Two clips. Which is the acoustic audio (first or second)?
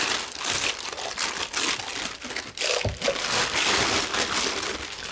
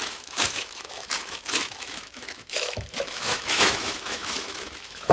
first